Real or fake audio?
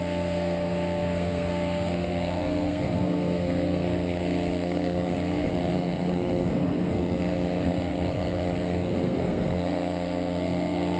fake